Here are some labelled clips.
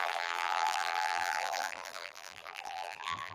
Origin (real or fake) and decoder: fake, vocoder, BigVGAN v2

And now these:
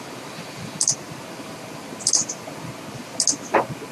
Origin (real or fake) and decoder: real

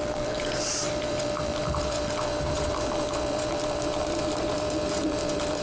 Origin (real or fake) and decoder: fake, vocoder, BigVGAN v2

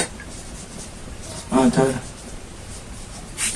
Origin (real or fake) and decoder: fake, vocoder, BigVGAN v2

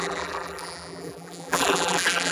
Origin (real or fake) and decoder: fake, vocoder, BigVGAN v2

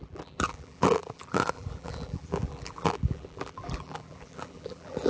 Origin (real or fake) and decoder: fake, vocoder, BigVGAN v2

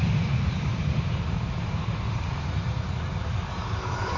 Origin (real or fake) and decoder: fake, vocoder, BigVGAN v2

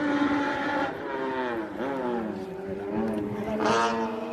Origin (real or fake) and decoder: real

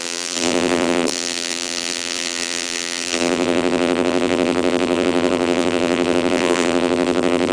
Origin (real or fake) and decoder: fake, vocoder, BigVGAN v2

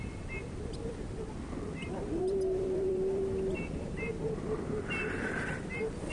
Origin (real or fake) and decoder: fake, vocoder, BigVGAN v2